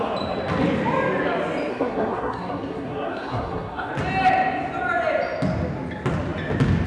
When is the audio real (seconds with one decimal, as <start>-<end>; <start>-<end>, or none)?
0.0-1.7; 3.9-6.9